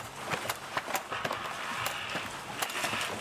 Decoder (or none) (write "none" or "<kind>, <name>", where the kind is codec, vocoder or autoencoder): none